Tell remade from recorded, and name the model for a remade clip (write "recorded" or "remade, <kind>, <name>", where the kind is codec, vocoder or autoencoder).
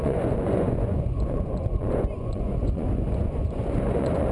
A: remade, vocoder, Vocos